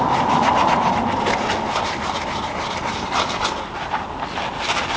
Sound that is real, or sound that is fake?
fake